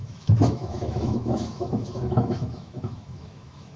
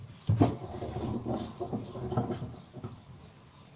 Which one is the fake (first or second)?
first